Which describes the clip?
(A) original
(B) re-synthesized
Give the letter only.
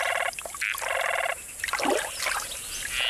A